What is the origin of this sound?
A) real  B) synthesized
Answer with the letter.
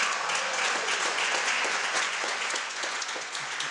B